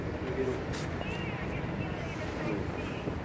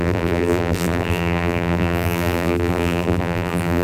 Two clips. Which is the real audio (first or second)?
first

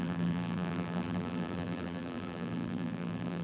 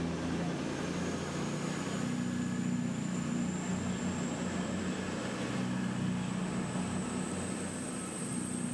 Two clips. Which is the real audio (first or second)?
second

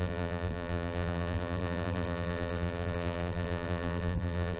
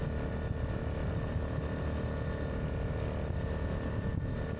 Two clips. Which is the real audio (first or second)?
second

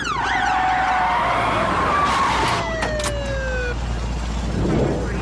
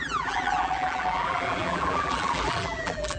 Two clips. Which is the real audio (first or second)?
first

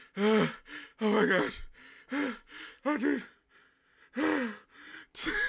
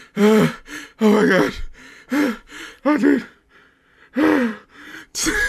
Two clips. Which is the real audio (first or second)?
first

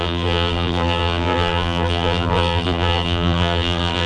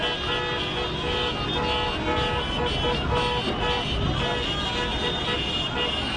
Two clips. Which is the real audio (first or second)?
second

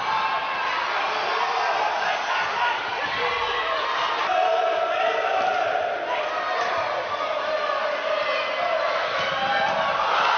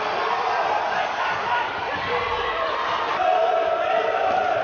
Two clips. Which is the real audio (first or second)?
first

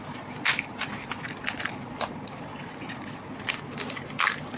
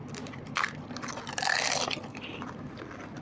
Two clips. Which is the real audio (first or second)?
first